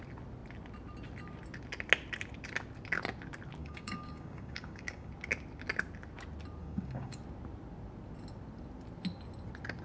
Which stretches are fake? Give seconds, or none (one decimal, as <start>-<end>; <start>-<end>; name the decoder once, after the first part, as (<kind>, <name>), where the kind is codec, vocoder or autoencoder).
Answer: 3.6-5.1 (codec, DAC); 6.6-7.2